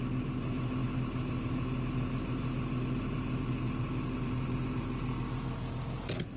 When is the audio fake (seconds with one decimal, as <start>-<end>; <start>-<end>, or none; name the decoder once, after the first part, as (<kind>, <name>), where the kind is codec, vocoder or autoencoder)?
none